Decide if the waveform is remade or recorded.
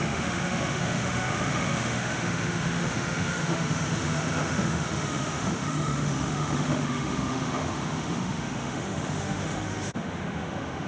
remade